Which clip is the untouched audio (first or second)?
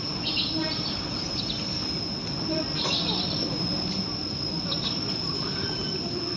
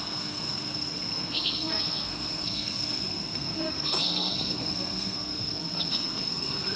first